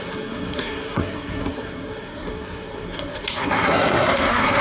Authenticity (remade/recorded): remade